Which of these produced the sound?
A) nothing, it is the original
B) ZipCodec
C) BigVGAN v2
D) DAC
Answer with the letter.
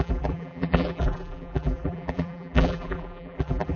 C